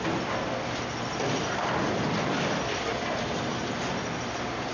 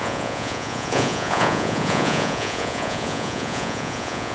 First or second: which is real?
first